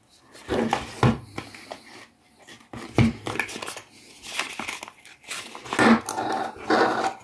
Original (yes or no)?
yes